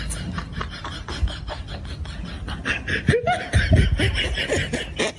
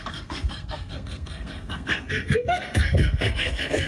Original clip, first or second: first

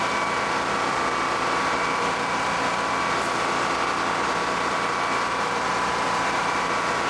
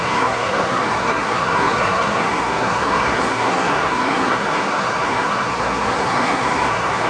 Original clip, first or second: first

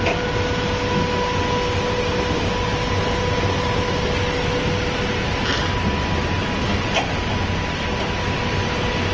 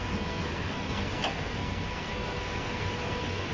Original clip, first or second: first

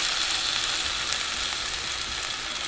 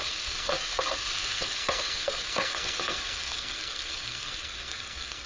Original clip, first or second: first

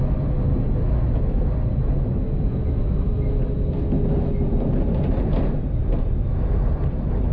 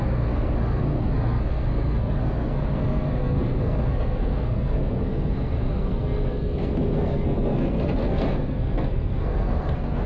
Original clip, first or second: first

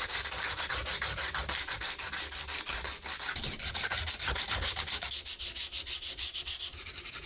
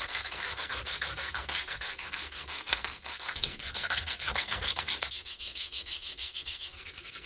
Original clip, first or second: first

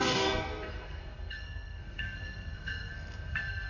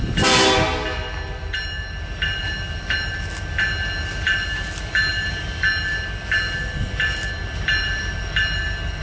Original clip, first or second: second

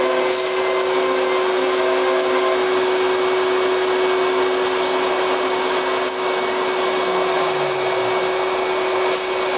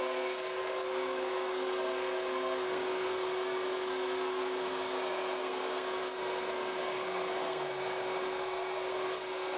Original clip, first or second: first